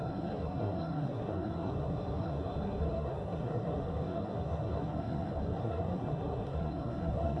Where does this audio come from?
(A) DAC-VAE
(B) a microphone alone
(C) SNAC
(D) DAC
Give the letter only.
C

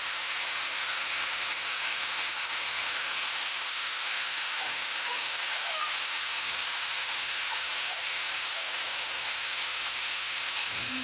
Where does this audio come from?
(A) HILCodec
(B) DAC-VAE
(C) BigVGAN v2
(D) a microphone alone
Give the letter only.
B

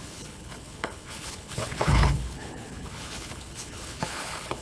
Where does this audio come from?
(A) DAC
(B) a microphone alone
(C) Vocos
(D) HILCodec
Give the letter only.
D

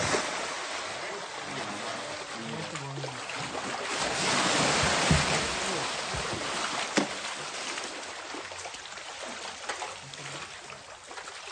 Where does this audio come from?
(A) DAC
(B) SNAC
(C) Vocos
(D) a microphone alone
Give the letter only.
D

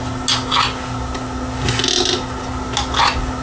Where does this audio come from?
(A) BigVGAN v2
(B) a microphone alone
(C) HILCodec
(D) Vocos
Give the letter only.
B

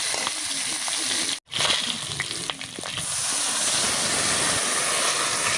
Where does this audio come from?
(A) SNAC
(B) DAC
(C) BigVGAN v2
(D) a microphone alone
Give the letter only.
D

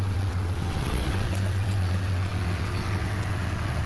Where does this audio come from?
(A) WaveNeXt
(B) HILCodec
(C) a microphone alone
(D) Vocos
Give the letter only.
A